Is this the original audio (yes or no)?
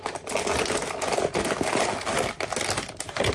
yes